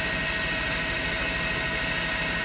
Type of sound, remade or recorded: recorded